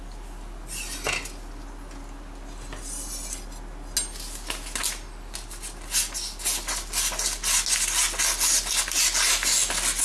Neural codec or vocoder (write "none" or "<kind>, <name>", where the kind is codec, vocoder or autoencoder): none